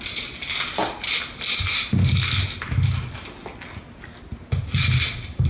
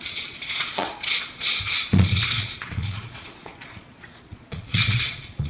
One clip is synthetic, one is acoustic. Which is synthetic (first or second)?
second